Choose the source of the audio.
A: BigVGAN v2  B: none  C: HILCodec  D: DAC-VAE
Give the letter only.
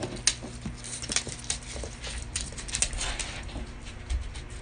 B